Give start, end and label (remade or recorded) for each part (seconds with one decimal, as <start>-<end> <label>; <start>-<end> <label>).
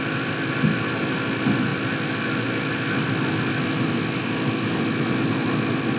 0.0-6.0 recorded